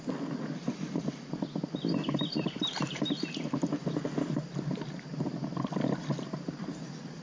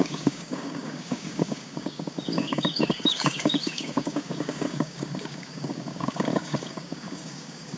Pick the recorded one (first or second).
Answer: first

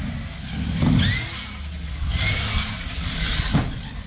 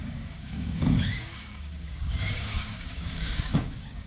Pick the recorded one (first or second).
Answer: first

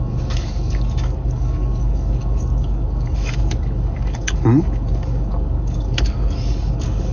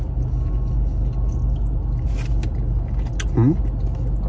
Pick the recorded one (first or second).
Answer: second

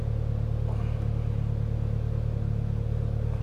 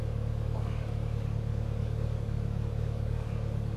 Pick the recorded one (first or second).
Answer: first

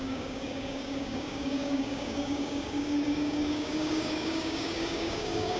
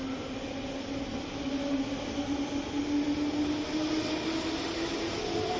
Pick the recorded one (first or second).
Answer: second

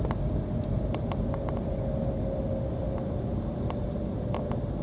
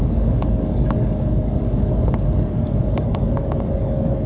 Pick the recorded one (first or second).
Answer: first